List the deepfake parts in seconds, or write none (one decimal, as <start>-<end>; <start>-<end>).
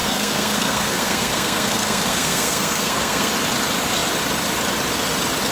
0.0-3.3